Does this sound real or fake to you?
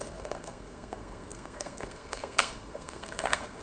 fake